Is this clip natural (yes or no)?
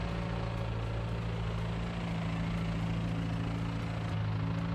yes